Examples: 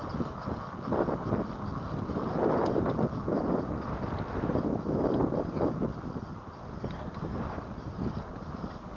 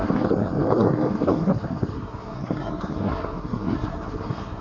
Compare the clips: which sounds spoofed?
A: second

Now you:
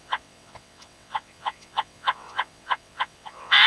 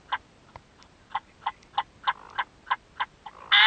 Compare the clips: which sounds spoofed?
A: first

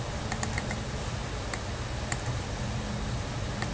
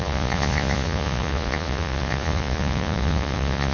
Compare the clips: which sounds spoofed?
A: second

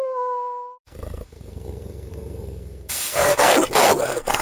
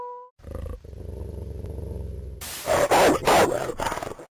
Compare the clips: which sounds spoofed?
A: first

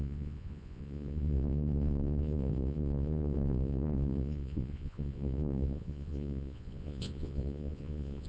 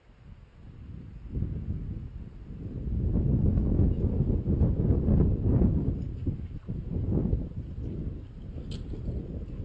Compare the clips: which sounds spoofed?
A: first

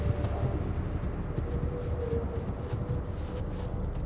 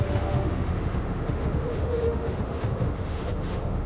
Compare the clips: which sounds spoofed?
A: second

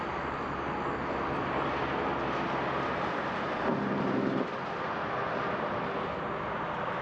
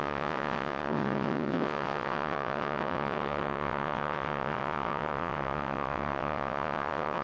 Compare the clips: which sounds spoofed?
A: second